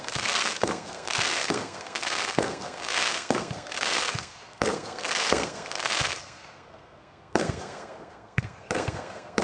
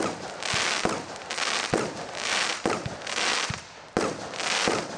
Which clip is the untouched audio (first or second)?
second